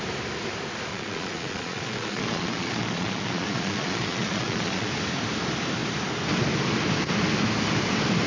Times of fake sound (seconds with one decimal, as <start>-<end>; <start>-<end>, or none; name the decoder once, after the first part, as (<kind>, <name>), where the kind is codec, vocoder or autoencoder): 0.9-4.9 (vocoder, Vocos)